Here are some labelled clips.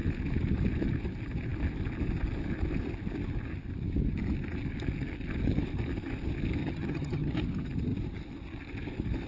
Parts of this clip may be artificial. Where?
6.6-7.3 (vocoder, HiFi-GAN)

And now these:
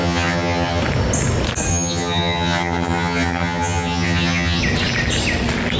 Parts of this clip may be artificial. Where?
0.0-0.8 (vocoder, HiFi-GAN); 1.7-4.6

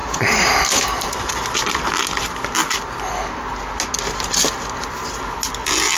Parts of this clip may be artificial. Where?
0.0-2.0 (vocoder, BigVGAN v2)

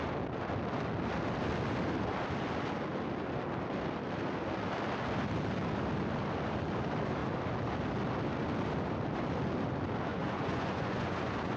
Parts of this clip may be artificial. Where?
10.1-11.6 (vocoder, Vocos)

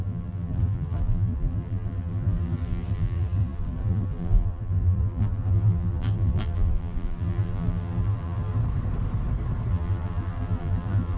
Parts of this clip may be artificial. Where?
0.0-8.6 (vocoder, BigVGAN v2); 9.7-11.2

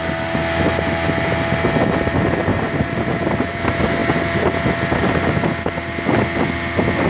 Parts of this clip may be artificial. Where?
2.5-3.6 (vocoder, BigVGAN v2)

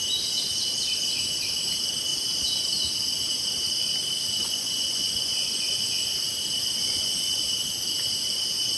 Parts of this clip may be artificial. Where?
4.4-6.0 (vocoder, Vocos); 6.8-7.4